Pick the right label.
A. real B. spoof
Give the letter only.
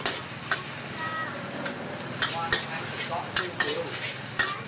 A